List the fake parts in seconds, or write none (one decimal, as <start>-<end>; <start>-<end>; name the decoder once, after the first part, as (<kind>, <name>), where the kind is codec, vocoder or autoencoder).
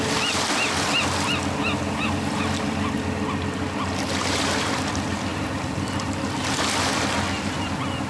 none